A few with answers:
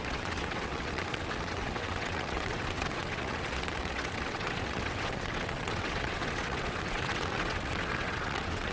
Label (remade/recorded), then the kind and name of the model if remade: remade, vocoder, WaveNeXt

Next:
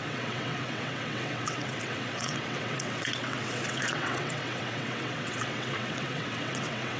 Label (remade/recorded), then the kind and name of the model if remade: remade, vocoder, WaveNeXt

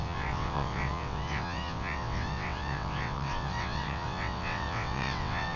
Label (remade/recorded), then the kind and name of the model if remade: remade, vocoder, WaveNeXt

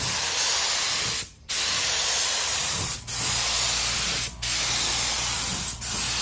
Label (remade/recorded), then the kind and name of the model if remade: recorded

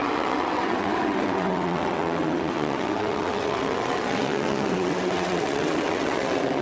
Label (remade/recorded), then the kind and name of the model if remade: remade, vocoder, WaveNeXt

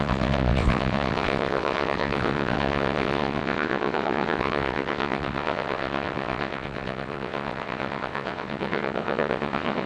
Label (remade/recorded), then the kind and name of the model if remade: remade, vocoder, WaveNeXt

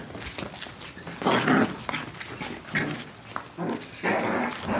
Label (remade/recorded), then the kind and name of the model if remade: recorded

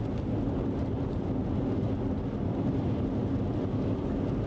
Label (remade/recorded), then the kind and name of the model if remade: recorded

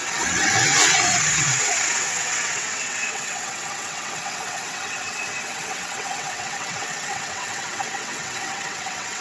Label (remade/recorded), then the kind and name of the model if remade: remade, vocoder, WaveNeXt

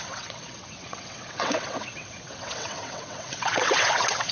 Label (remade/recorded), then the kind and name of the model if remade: remade, vocoder, WaveNeXt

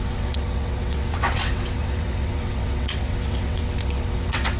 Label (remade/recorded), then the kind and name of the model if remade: remade, vocoder, WaveNeXt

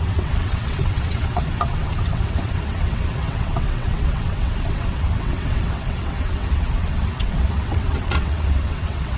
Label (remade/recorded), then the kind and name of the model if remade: remade, vocoder, WaveNeXt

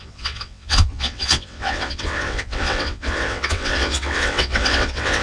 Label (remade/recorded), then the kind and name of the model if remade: remade, vocoder, WaveNeXt